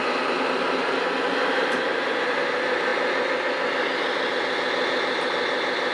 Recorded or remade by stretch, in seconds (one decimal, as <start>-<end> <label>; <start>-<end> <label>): 0.0-5.9 recorded